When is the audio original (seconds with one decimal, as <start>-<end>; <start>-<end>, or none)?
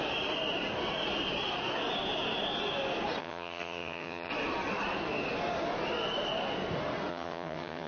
0.0-3.2; 4.3-7.1